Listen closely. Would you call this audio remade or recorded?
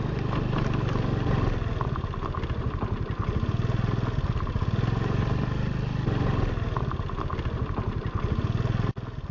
recorded